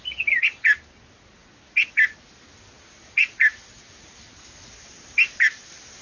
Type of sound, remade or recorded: recorded